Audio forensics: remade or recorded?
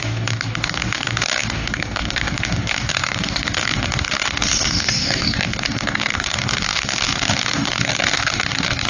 remade